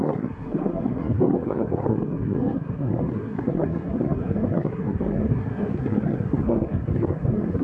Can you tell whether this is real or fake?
fake